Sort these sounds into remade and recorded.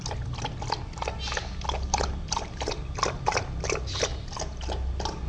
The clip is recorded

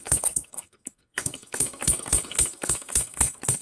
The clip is remade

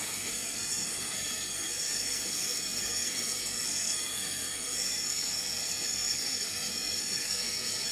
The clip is remade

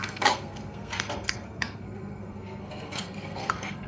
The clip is remade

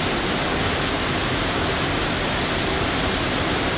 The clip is recorded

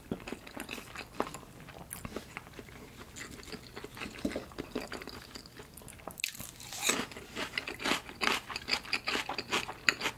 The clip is recorded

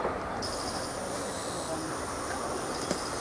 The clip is recorded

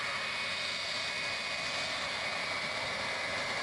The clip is recorded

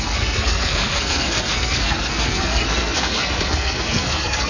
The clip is remade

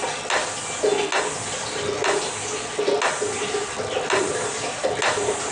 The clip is recorded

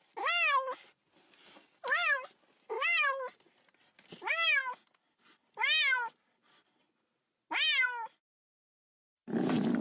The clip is recorded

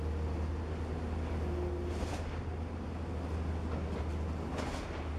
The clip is recorded